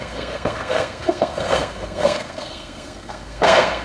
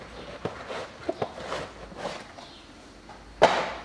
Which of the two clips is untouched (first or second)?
second